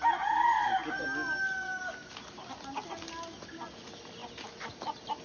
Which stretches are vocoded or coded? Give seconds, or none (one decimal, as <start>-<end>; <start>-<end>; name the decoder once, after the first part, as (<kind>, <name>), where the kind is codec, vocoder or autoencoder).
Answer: none